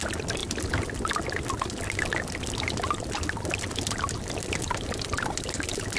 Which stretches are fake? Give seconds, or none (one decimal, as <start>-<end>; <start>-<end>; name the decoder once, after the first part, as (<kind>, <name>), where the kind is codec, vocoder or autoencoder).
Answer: none